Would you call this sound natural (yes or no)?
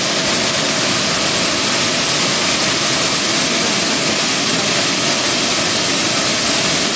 yes